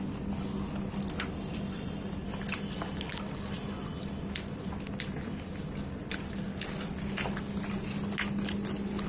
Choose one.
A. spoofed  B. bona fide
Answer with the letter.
B